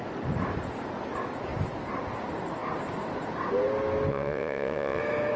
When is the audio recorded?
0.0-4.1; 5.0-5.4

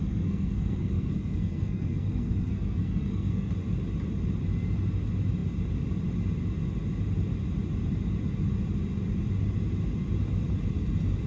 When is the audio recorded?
3.5-11.3

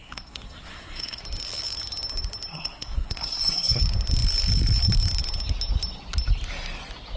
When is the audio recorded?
1.2-2.5; 3.8-7.2